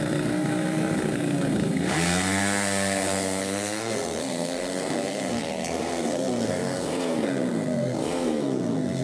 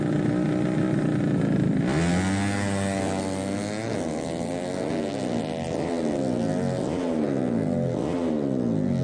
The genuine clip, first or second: second